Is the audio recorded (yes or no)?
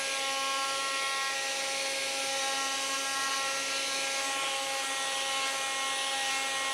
yes